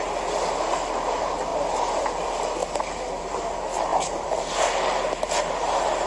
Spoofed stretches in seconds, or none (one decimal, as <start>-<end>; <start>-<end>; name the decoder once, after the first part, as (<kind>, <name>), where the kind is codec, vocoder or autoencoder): 3.9-4.5 (vocoder, BigVGAN v2)